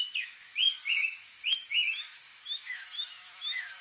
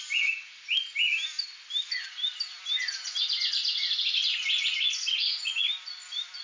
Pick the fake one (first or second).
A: first